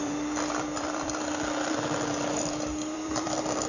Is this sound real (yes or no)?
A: no